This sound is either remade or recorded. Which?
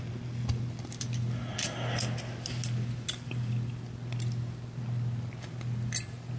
recorded